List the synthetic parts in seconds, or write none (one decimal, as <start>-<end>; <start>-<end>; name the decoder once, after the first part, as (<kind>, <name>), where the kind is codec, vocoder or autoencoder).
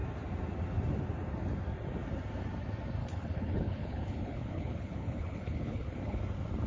3.0-6.2 (codec, HILCodec)